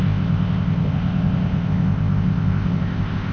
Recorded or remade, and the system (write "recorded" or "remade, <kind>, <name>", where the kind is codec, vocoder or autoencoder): remade, codec, ZipCodec